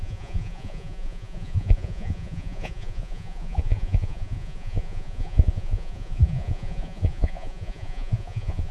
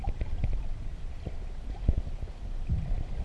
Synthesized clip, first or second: first